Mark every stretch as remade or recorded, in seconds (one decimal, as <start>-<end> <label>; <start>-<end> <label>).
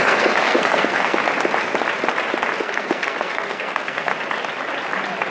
0.0-1.2 remade; 1.2-2.6 recorded; 2.6-4.1 remade; 4.1-5.3 recorded